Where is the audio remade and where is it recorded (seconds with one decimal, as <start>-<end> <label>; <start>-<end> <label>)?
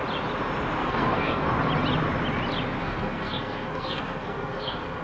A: 0.0-0.8 recorded; 0.8-1.5 remade; 1.5-2.8 recorded; 2.8-5.0 remade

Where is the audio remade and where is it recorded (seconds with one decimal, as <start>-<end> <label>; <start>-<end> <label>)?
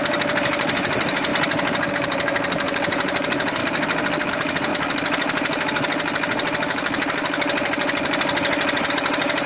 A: 0.0-1.3 remade; 1.3-1.9 recorded; 1.9-3.6 remade; 3.6-4.3 recorded; 4.3-4.7 remade; 4.7-8.9 recorded; 8.9-9.5 remade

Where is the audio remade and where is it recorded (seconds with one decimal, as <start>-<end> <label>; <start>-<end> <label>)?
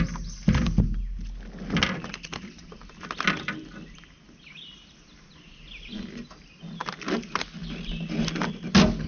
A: 0.0-9.1 recorded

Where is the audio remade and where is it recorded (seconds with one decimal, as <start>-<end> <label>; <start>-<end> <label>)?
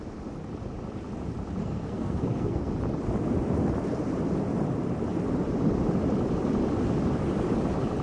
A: 0.0-1.6 recorded; 1.6-2.7 remade; 2.7-8.0 recorded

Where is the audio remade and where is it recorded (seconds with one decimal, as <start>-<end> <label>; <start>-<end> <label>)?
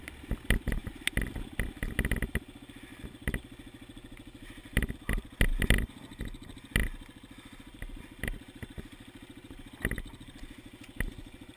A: 0.0-11.6 recorded